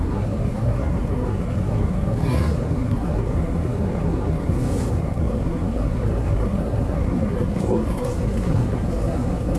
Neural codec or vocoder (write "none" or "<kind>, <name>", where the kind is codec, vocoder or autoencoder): codec, SNAC